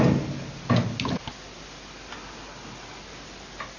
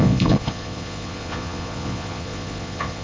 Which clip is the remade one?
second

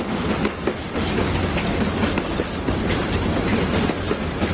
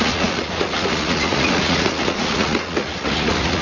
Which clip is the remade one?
second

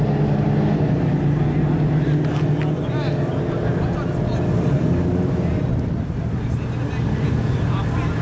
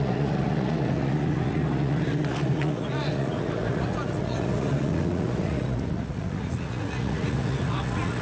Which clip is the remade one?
second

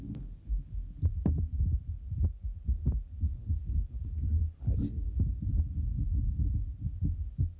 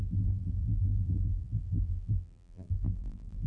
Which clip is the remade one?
second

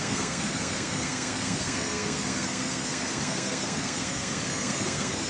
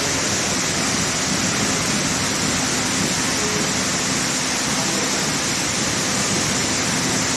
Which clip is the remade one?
first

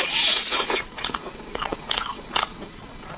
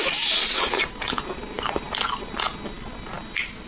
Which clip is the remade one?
first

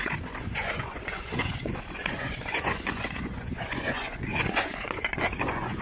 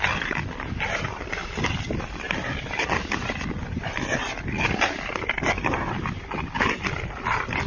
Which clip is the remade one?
first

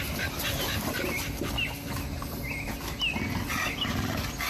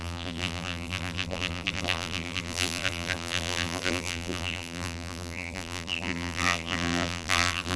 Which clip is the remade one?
second